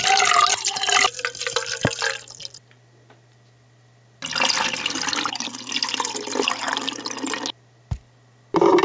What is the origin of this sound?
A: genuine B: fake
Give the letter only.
A